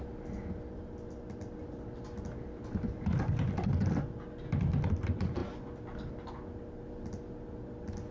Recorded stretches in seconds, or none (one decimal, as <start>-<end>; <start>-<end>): 0.0-8.1